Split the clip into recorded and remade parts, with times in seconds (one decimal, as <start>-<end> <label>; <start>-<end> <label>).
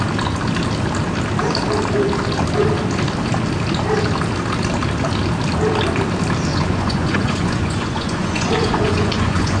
0.0-6.5 recorded; 6.5-9.6 remade